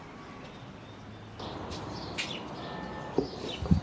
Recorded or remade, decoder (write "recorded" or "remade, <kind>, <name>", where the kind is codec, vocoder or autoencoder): recorded